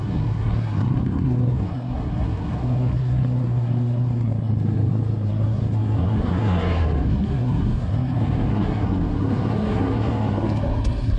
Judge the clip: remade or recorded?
remade